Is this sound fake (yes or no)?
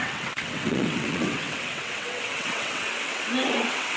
yes